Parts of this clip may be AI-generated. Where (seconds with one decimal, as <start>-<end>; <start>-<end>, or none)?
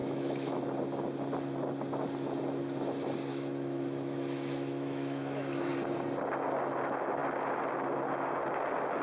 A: 0.0-0.6; 3.3-5.7